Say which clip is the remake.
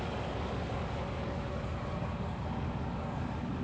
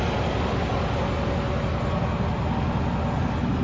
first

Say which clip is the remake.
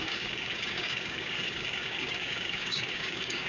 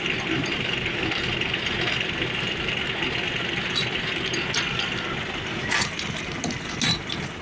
first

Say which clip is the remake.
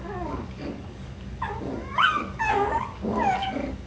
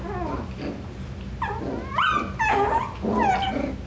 first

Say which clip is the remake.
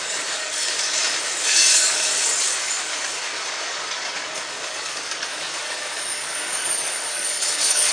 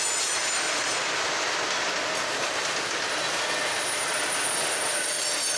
first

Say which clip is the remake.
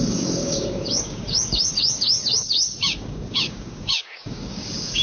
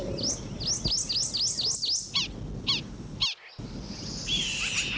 first